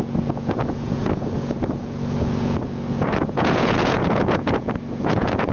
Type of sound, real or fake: fake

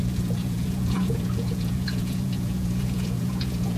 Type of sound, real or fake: fake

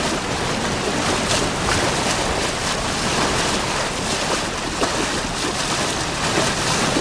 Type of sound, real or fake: real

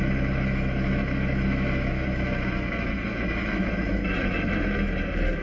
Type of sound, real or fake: fake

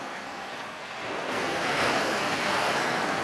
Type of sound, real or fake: fake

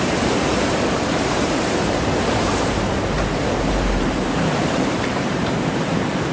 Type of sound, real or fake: fake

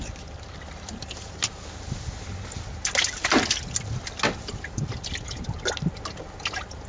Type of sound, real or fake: real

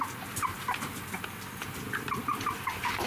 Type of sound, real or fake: real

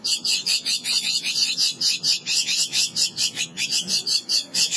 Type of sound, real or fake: fake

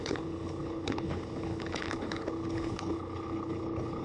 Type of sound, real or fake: fake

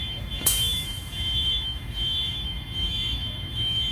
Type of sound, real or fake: fake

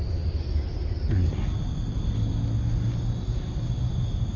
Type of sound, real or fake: real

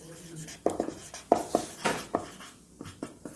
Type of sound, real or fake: real